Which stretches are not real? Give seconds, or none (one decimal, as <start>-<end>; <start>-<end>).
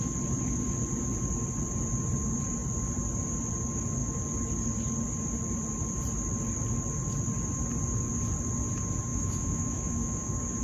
9.1-10.6